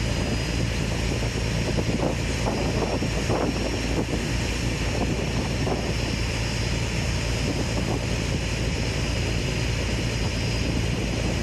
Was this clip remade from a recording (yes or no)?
no